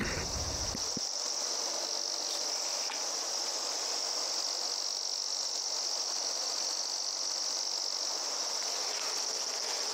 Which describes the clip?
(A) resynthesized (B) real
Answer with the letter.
B